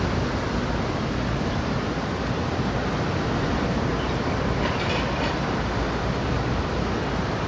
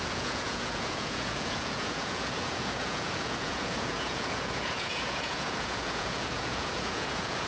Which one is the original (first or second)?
first